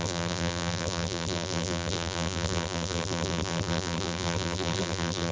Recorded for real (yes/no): no